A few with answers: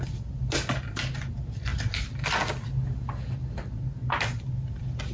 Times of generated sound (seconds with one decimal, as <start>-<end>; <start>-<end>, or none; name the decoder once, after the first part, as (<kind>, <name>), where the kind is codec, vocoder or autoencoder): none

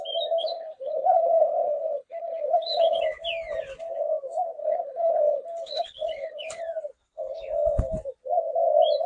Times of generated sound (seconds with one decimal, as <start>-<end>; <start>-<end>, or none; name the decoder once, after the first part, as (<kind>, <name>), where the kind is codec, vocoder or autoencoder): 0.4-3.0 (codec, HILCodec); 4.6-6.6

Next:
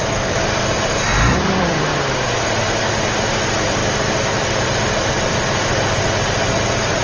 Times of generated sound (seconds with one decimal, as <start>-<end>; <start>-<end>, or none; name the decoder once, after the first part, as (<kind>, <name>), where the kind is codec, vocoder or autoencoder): 0.0-1.9 (vocoder, BigVGAN v2); 3.3-7.0

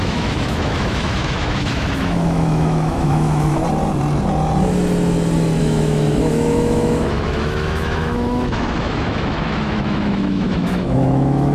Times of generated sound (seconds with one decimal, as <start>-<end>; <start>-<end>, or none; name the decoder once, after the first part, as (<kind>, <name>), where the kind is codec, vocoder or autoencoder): 0.0-3.6 (autoencoder, DAC-VAE); 5.6-11.5

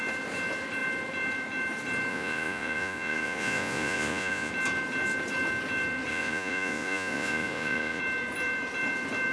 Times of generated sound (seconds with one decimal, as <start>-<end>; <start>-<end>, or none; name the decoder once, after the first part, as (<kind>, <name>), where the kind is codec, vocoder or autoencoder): 2.1-4.5 (vocoder, Vocos); 6.1-8.0

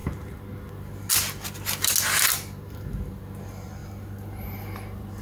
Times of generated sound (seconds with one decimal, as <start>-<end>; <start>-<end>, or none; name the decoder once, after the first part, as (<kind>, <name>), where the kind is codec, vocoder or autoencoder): none

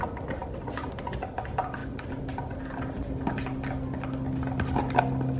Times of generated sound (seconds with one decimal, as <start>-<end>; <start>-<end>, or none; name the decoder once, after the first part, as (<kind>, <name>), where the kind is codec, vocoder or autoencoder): none

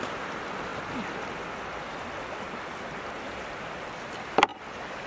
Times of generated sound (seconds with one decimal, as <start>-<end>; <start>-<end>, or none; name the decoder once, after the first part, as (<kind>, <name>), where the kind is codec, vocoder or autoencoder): 0.0-5.1 (vocoder, BigVGAN v2)